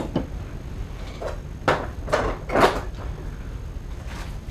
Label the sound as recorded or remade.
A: recorded